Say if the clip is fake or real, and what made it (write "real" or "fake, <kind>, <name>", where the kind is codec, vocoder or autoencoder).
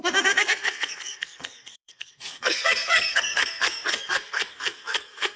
fake, codec, SNAC